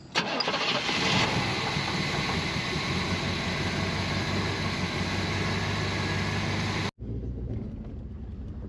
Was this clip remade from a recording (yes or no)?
no